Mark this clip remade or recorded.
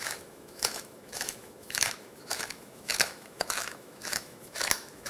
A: remade